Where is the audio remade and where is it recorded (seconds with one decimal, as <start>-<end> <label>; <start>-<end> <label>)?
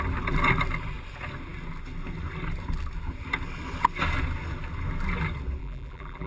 0.0-5.6 recorded; 5.6-6.3 remade